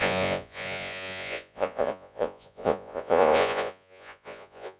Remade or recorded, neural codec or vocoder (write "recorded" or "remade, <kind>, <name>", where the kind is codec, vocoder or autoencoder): remade, vocoder, Vocos